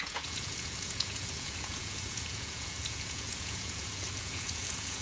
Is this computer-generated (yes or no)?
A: yes